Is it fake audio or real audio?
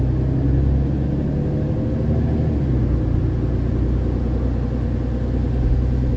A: real